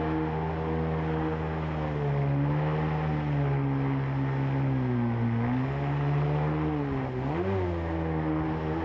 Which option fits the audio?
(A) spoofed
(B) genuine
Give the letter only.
B